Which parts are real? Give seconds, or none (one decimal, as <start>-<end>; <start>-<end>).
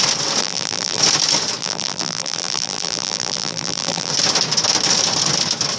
0.0-0.4; 1.0-1.6; 4.1-5.8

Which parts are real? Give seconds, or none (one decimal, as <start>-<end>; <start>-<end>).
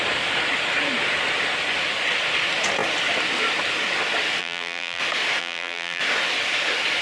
0.0-4.4; 5.0-5.4; 6.0-7.0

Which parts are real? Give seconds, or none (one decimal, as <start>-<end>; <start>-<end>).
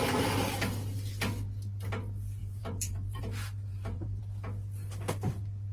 0.0-2.4; 3.2-3.7; 4.2-5.7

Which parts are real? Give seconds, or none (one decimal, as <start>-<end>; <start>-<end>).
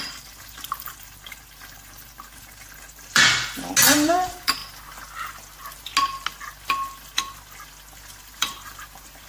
3.2-3.9; 4.6-8.2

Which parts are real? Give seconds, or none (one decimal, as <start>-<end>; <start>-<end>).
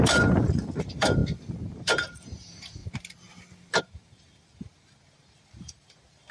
1.2-1.7; 2.8-3.8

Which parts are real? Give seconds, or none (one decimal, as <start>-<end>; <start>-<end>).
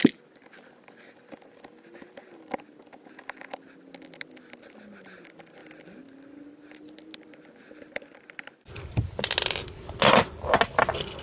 0.0-11.2